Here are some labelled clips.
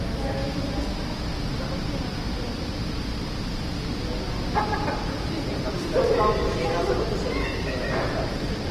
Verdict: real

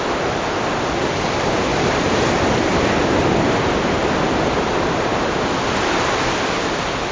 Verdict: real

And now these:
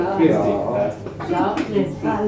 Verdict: real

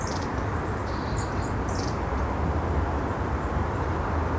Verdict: real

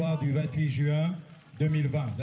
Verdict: fake